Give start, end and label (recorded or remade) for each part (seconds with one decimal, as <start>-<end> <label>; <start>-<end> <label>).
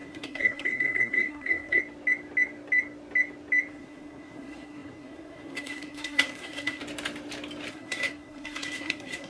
0.0-1.8 remade; 1.8-3.7 recorded; 3.7-6.8 remade; 6.8-7.7 recorded; 7.7-9.3 remade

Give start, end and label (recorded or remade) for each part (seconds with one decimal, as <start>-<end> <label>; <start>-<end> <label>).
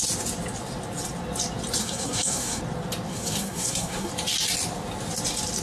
0.0-1.8 recorded; 1.8-2.6 remade; 2.6-3.1 recorded; 3.1-4.1 remade; 4.1-5.6 recorded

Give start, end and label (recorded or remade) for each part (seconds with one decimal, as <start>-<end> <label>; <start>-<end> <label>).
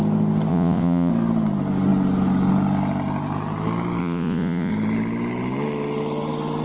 0.0-0.5 recorded; 0.5-1.1 remade; 1.1-4.0 recorded; 4.0-4.7 remade; 4.7-6.6 recorded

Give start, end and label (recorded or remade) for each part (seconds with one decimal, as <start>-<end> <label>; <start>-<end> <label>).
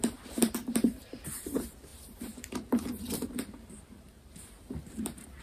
0.0-5.4 remade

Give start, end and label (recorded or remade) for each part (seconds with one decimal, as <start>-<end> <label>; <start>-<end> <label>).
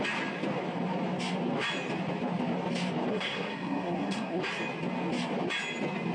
0.0-3.1 recorded; 3.1-4.4 remade; 4.4-6.1 recorded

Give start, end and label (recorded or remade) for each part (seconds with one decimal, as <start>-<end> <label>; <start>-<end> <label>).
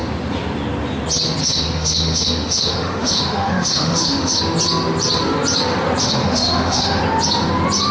0.0-1.4 recorded; 1.4-4.4 remade; 4.4-6.0 recorded; 6.0-7.0 remade; 7.0-7.9 recorded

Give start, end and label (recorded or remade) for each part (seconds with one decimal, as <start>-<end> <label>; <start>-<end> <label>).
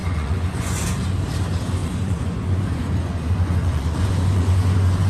0.0-0.8 remade; 0.8-1.8 recorded; 1.8-5.1 remade